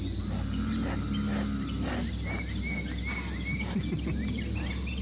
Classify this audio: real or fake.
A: real